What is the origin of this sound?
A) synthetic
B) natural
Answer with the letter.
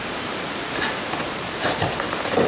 B